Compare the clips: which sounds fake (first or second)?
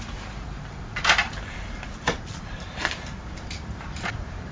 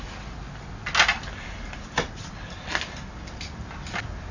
first